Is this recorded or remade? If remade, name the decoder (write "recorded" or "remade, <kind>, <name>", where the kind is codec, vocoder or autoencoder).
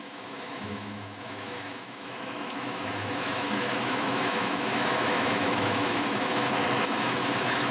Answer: remade, autoencoder, DAC-VAE